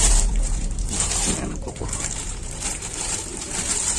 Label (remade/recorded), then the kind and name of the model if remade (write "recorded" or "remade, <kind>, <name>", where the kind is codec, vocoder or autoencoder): remade, vocoder, BigVGAN v2